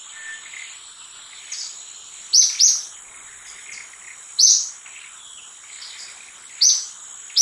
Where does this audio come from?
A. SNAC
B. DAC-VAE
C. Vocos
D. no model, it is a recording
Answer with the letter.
D